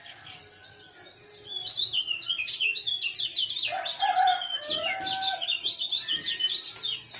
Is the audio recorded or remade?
recorded